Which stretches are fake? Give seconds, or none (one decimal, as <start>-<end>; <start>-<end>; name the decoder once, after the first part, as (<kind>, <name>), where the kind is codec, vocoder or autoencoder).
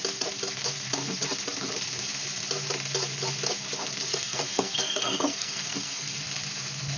4.1-6.2 (codec, SNAC)